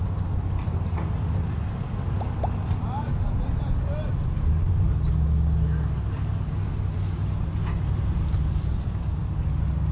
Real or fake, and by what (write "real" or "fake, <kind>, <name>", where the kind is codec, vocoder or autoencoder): real